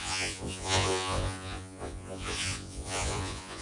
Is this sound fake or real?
fake